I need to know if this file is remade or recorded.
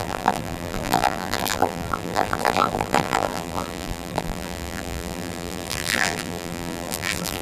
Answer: remade